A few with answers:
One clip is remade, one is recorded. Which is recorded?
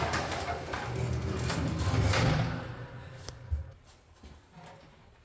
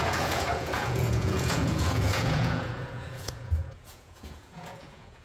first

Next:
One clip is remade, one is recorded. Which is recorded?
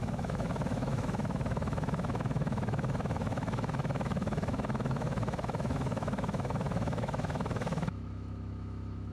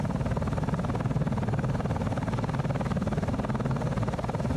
second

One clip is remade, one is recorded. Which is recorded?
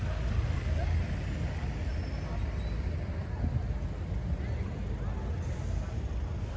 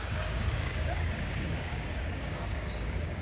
first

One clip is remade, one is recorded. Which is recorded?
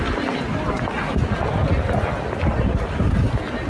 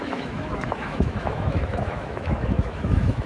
first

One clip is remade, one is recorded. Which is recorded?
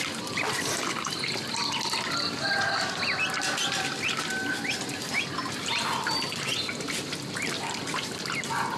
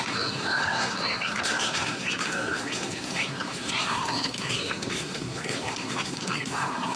first